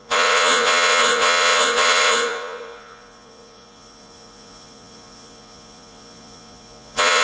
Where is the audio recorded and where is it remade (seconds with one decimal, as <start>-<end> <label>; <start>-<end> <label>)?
0.0-7.2 remade